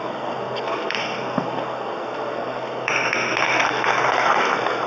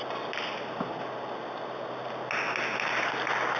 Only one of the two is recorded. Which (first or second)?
second